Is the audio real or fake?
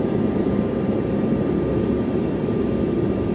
fake